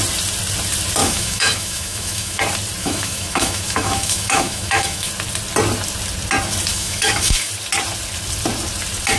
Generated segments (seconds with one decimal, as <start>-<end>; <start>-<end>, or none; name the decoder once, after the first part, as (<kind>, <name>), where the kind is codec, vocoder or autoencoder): 1.0-2.4 (autoencoder, DAC-VAE); 2.8-5.1; 6.7-7.5